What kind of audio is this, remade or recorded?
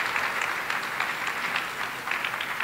recorded